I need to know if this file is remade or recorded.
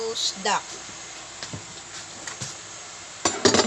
recorded